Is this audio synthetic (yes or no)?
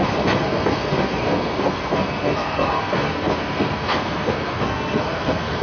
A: yes